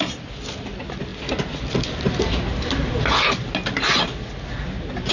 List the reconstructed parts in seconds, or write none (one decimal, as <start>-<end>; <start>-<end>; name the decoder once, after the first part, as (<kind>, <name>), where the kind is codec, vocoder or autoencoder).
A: none